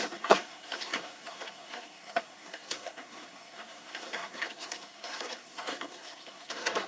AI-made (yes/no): yes